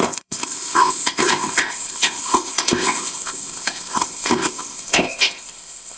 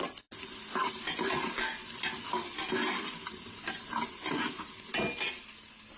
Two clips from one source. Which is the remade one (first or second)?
first